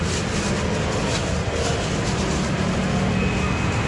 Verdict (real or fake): real